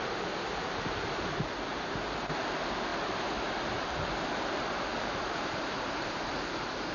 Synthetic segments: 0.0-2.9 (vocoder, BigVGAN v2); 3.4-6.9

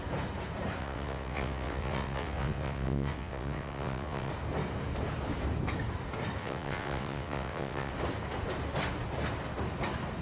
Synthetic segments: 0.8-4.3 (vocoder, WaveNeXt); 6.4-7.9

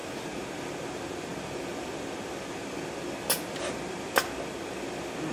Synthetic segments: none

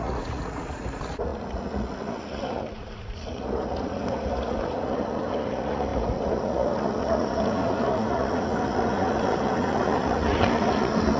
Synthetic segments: 0.0-11.2 (vocoder, Vocos)

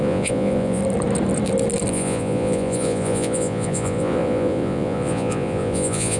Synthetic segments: 0.0-0.8 (vocoder, Vocos); 1.9-6.2

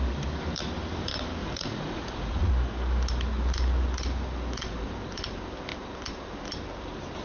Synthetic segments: 1.4-2.5 (vocoder, Vocos)